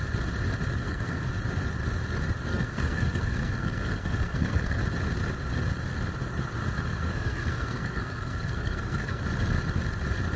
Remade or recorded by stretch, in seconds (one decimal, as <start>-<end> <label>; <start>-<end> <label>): 0.0-0.8 recorded; 0.8-1.3 remade; 1.3-2.5 recorded; 2.5-4.8 remade; 4.8-6.9 recorded; 6.9-9.2 remade; 9.2-10.4 recorded